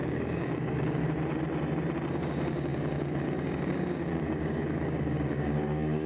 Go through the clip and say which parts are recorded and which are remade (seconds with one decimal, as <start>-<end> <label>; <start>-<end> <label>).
0.0-1.0 remade; 1.0-2.1 recorded; 2.1-6.1 remade